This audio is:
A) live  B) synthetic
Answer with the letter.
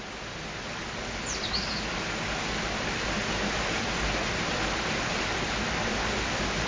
A